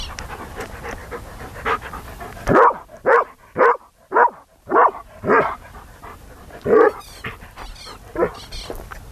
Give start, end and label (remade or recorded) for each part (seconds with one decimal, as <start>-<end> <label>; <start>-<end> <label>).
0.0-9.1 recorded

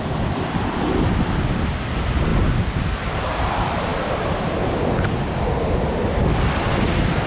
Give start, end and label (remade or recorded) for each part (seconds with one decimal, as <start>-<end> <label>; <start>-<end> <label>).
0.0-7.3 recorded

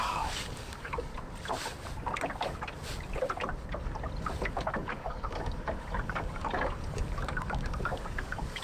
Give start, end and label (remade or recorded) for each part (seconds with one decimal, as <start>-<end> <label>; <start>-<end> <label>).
0.0-1.1 remade; 1.1-4.5 recorded; 4.5-8.6 remade